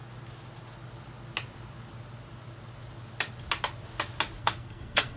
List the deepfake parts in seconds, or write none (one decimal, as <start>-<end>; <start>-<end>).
4.4-5.2